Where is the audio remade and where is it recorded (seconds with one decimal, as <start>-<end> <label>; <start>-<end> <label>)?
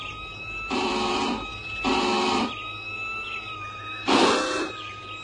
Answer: 0.0-5.2 remade